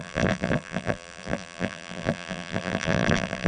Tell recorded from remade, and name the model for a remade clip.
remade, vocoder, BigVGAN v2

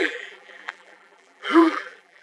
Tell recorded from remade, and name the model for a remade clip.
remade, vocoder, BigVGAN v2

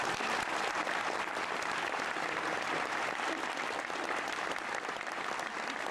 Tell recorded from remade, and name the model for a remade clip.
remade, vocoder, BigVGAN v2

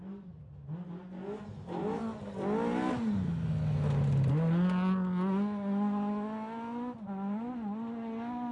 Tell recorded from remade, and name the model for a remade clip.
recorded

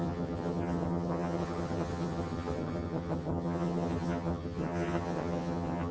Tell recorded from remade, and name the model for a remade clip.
remade, vocoder, HiFi-GAN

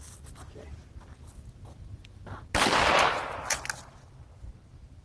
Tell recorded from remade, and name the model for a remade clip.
recorded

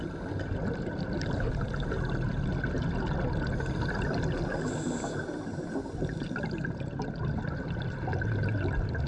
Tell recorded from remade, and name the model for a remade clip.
recorded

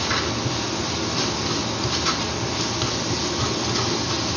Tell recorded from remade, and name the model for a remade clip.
recorded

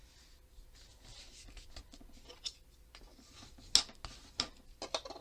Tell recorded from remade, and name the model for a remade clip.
recorded